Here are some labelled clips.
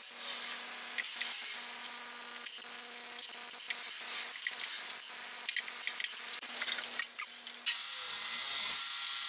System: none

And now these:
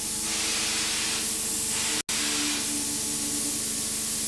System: none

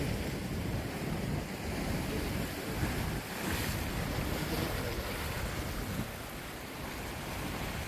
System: none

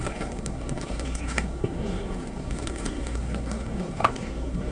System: codec, SNAC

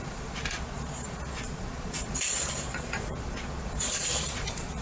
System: vocoder, Vocos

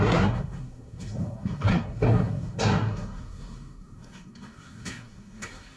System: codec, SNAC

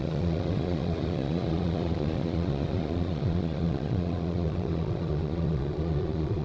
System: vocoder, Vocos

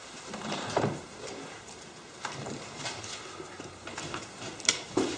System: vocoder, BigVGAN v2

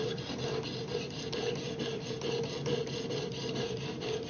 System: none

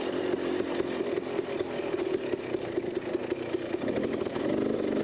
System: none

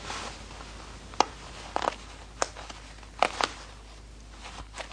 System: none